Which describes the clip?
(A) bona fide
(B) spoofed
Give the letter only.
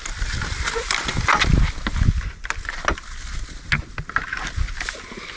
A